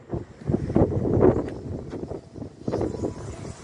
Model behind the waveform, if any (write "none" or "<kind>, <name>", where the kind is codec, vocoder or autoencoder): none